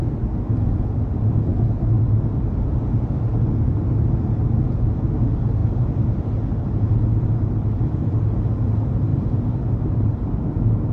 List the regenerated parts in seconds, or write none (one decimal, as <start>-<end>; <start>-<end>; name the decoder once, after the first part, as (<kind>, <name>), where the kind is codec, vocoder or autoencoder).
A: 9.1-10.3 (vocoder, BigVGAN v2)